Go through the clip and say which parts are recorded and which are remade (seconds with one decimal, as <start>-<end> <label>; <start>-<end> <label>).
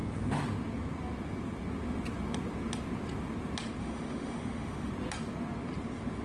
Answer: 0.0-3.8 recorded; 3.8-4.9 remade; 4.9-6.2 recorded